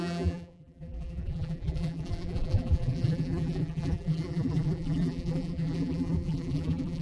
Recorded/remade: remade